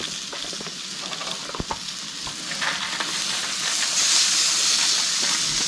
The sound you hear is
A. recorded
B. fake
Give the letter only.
A